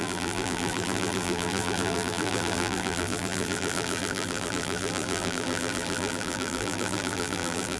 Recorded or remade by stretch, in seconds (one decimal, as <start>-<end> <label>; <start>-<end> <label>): 0.0-7.8 remade